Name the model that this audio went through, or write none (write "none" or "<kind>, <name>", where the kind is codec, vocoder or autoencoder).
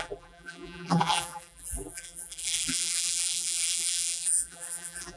vocoder, BigVGAN v2